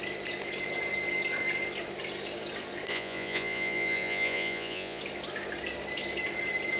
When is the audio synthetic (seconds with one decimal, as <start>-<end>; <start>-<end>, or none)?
2.9-5.0